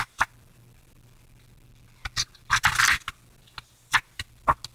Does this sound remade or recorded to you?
recorded